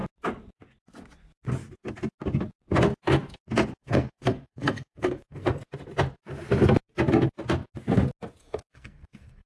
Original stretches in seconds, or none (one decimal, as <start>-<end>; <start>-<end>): 0.0-3.8; 5.6-8.4